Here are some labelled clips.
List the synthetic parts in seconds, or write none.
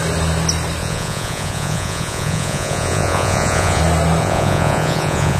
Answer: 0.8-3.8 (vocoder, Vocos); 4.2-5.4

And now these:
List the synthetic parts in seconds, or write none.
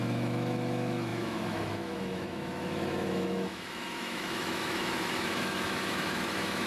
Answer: 0.0-6.7 (autoencoder, DAC-VAE)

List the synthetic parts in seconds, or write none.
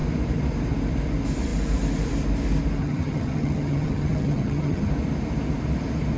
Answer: 2.8-4.9 (vocoder, HiFi-GAN)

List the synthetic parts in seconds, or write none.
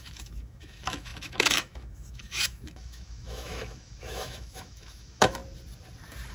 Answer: 0.0-5.4 (autoencoder, DAC-VAE)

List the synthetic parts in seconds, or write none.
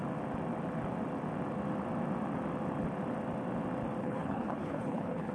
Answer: 4.0-5.3 (codec, HILCodec)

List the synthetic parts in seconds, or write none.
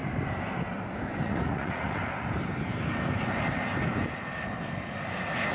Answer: 1.2-2.0 (vocoder, Vocos)